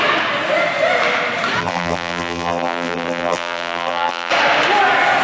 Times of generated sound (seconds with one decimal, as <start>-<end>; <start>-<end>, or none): 1.6-4.3